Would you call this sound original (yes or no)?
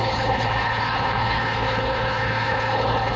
no